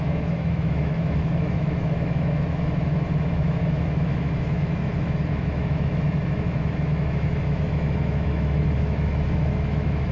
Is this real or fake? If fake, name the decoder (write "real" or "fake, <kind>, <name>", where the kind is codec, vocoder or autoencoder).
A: fake, autoencoder, DAC-VAE